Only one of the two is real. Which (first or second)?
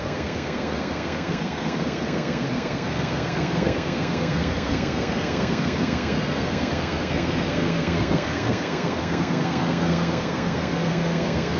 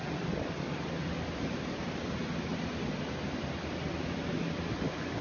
second